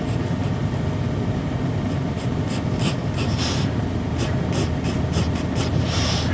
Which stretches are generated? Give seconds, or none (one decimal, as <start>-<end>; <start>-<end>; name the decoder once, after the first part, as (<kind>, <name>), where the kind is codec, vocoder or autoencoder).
none